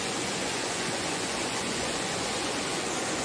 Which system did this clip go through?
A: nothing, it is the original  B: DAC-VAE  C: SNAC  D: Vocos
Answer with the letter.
D